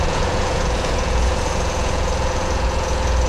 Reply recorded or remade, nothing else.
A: remade